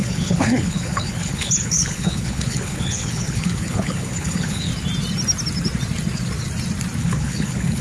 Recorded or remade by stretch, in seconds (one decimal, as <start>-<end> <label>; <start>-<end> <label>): 0.0-4.7 remade; 4.7-7.0 recorded; 7.0-7.8 remade